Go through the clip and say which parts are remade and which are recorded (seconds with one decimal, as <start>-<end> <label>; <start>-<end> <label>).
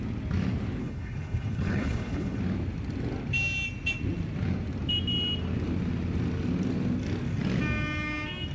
0.0-0.8 recorded; 0.8-2.4 remade; 2.4-8.5 recorded